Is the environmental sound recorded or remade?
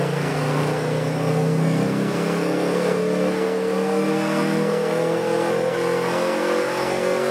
remade